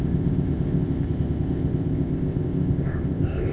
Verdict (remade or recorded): remade